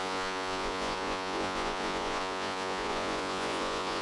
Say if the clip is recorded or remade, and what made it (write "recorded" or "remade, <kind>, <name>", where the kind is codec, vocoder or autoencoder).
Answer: remade, vocoder, Vocos